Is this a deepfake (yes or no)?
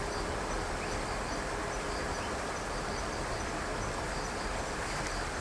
no